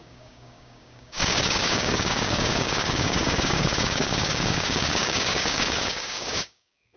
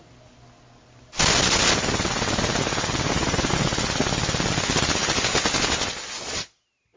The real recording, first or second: second